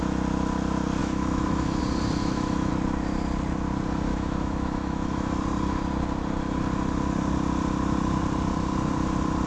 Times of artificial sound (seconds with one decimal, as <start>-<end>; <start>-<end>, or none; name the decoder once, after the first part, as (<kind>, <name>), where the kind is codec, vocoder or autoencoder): 1.0-1.8 (autoencoder, DAC-VAE); 2.2-2.7; 4.1-5.4